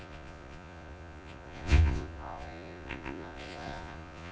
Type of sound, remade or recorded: remade